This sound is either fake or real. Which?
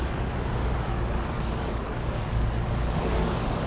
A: fake